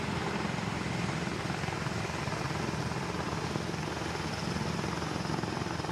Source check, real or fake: real